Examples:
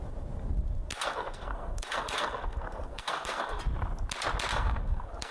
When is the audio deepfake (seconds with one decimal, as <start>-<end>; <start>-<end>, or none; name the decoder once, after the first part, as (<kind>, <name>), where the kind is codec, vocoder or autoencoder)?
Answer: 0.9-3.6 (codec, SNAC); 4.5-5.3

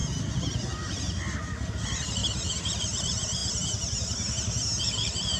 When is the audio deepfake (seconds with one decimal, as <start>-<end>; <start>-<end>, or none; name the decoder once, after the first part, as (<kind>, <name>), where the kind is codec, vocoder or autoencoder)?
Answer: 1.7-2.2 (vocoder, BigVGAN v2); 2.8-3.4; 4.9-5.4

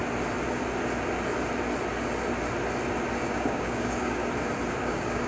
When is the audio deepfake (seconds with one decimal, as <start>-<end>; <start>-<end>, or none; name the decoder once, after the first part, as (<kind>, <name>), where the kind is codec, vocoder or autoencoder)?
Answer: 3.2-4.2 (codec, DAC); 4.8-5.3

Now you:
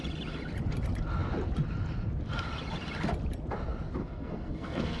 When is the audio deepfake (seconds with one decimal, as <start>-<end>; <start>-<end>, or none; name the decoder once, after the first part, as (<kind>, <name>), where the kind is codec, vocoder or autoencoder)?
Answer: 4.0-5.0 (codec, SNAC)